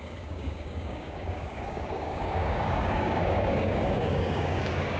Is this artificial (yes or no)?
yes